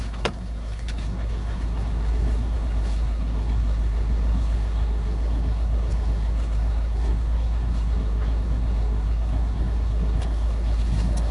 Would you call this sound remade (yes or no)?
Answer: yes